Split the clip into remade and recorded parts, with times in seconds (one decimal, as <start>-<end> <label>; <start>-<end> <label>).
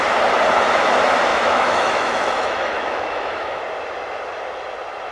0.0-1.3 recorded; 1.3-3.6 remade; 3.6-5.1 recorded